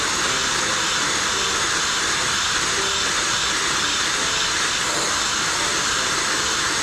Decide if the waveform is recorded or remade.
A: recorded